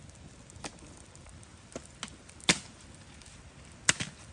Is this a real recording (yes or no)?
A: yes